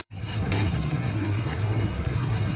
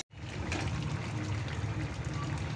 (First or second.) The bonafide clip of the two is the second